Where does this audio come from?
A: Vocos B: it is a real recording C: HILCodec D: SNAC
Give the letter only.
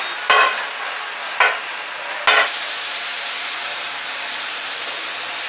B